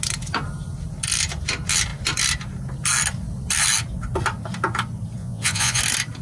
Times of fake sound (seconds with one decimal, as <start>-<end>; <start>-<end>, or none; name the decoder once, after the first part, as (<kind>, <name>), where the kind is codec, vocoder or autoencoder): 5.2-5.8 (vocoder, Vocos)